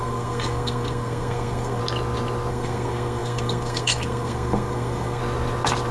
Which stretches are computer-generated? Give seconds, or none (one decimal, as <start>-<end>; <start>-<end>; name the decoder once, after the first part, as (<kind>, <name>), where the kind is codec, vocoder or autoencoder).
0.0-1.8 (codec, SNAC); 2.5-5.2